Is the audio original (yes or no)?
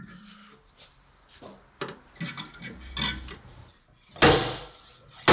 yes